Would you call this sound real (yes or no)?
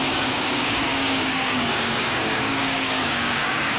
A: no